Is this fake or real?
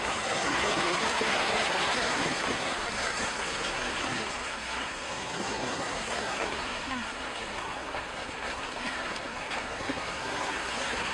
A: fake